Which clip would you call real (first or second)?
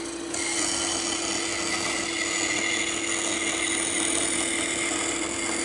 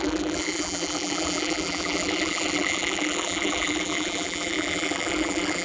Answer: first